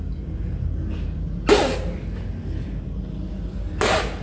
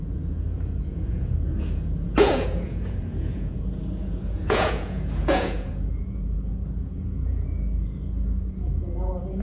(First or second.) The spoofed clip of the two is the second